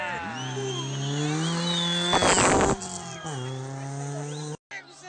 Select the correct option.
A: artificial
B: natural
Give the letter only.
B